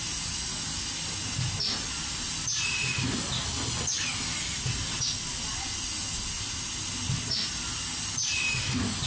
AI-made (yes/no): no